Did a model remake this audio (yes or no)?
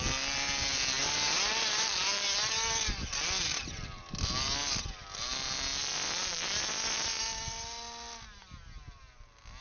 no